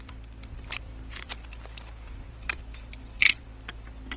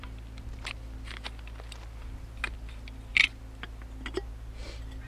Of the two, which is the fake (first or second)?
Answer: first